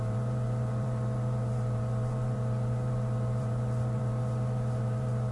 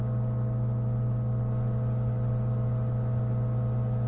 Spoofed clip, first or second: first